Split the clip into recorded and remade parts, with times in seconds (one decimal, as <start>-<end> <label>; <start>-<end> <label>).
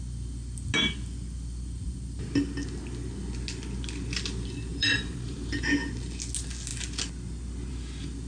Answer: 0.0-4.7 recorded; 4.7-5.7 remade; 5.7-8.3 recorded